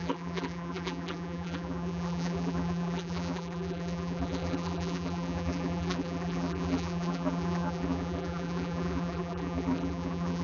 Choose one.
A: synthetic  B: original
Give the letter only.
A